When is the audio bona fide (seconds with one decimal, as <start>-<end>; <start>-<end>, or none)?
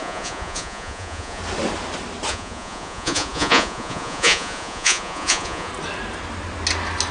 1.4-2.3; 5.7-7.1